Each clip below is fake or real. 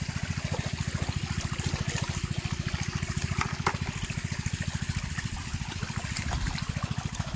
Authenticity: real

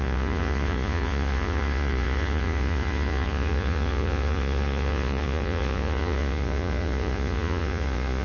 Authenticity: fake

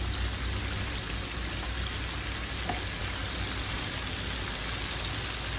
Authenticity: real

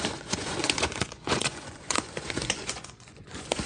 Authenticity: fake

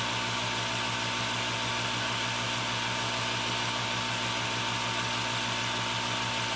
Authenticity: real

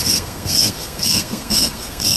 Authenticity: fake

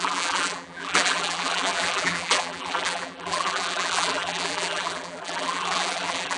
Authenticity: fake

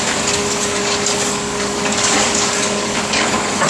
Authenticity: fake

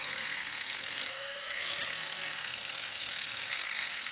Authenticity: fake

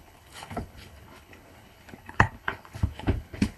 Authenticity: fake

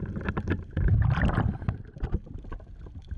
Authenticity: real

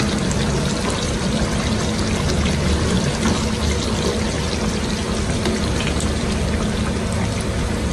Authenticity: real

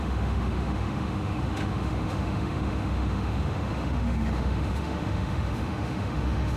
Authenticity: fake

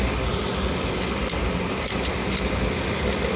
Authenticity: real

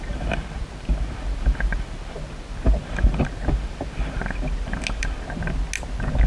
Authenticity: real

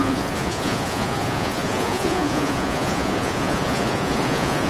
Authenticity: fake